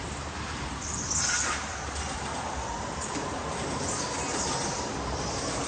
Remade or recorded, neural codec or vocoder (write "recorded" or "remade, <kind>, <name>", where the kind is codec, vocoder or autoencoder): recorded